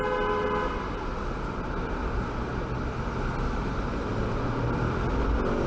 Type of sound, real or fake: real